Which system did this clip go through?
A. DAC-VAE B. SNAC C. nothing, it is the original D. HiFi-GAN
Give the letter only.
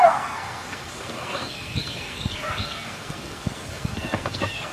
B